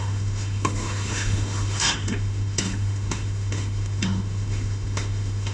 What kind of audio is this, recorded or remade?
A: remade